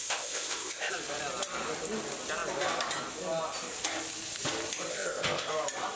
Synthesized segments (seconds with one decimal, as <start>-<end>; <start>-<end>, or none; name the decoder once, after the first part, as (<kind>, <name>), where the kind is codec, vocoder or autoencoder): 0.0-0.9 (codec, ZipCodec); 4.9-5.5